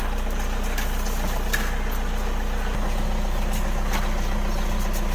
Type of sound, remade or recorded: recorded